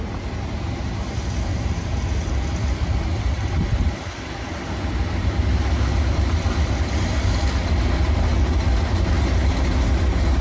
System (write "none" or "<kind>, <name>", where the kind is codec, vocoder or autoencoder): none